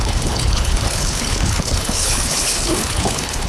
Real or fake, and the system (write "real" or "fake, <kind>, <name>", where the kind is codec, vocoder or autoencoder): fake, codec, HILCodec